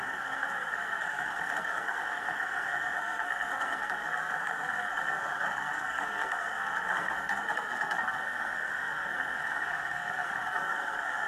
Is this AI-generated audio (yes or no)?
yes